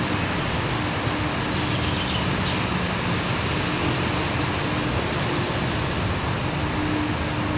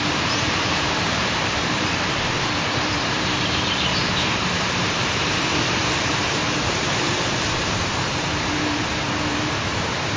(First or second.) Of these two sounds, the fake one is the second